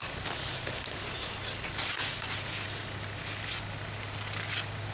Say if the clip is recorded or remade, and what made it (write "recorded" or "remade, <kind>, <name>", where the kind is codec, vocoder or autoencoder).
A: recorded